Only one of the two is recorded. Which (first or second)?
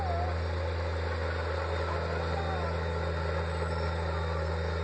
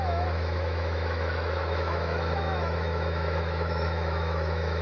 first